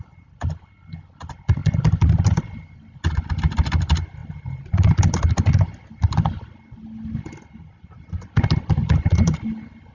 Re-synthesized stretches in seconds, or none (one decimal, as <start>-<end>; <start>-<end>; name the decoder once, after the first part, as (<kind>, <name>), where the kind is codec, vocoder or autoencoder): none